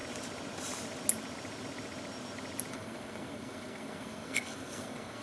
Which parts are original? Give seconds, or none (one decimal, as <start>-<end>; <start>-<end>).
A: 0.0-2.7